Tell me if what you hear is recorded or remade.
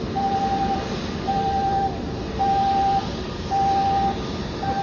recorded